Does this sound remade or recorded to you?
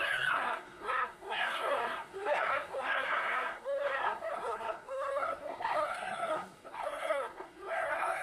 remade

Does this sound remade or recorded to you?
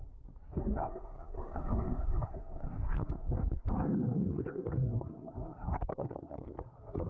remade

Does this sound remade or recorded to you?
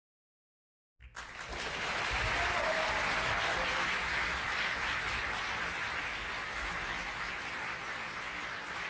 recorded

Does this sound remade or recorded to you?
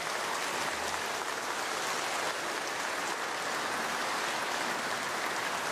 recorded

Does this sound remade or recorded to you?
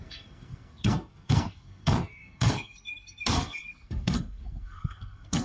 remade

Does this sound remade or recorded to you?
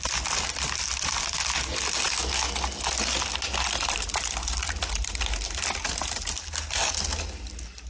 recorded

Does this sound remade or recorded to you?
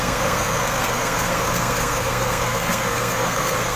remade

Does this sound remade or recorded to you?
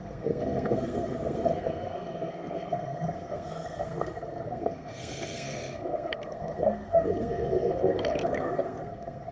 remade